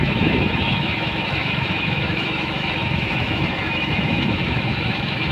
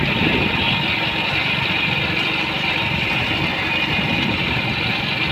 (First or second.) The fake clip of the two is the first